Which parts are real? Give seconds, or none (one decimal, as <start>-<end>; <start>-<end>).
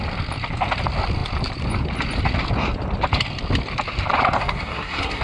0.0-4.4